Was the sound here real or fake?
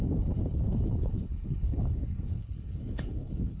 fake